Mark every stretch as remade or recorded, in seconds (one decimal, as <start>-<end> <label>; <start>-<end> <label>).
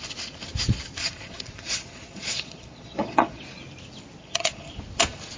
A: 0.0-1.0 recorded; 1.0-3.4 remade; 3.4-4.2 recorded; 4.2-4.7 remade; 4.7-5.4 recorded